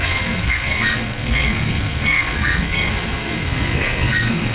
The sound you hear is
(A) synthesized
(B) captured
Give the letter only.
A